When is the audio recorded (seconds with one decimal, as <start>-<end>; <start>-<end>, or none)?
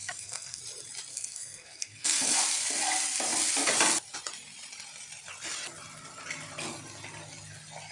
0.6-1.1; 2.4-7.9